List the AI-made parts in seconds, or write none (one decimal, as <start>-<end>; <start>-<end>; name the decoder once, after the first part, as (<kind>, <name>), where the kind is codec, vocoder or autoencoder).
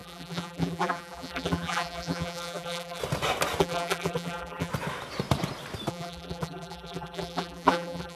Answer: 0.0-3.0 (vocoder, BigVGAN v2); 3.6-4.7; 5.9-8.2